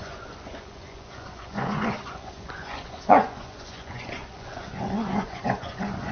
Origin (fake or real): fake